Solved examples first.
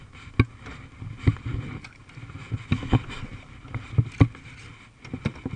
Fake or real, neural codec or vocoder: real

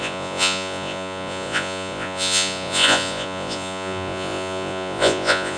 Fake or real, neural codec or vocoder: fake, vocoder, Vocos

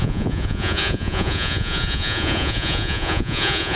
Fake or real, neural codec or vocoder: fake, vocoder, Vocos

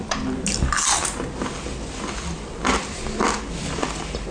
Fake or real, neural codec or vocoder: real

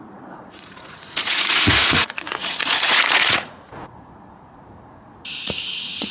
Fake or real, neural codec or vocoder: fake, vocoder, Vocos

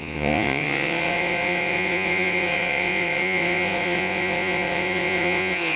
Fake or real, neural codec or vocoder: fake, vocoder, Vocos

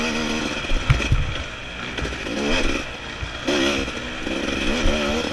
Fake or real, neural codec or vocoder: real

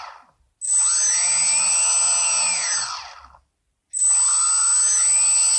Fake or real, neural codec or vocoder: real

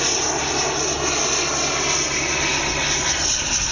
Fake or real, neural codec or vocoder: real